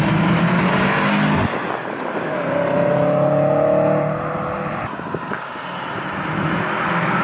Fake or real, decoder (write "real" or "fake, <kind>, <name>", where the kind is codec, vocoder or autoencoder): real